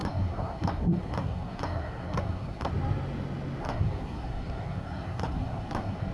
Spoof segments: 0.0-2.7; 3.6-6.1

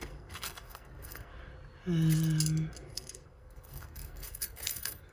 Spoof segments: 0.0-1.3; 2.9-5.1

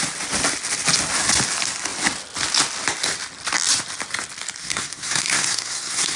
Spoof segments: 4.6-6.2

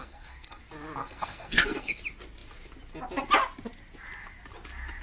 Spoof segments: 0.0-0.6; 1.0-2.0

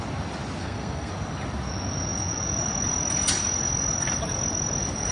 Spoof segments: 0.6-1.1

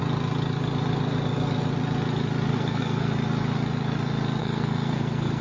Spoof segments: 2.5-3.1; 4.4-5.4